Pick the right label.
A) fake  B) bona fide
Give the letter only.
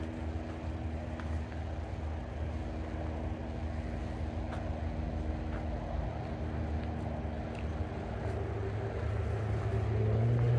B